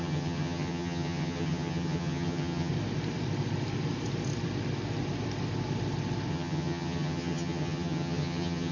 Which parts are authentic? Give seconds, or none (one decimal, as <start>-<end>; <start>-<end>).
2.7-6.3

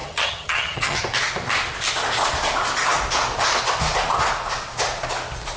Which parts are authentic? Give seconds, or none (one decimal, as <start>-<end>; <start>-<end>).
1.0-5.6